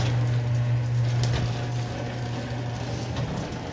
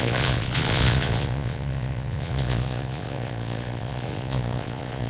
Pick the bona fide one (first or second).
first